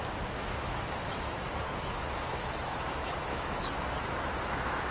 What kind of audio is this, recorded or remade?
remade